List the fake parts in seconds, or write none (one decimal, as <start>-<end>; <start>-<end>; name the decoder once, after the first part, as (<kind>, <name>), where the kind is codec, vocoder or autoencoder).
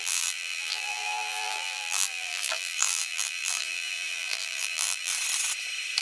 0.0-5.1 (vocoder, BigVGAN v2)